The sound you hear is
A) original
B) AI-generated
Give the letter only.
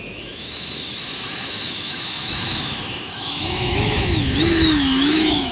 B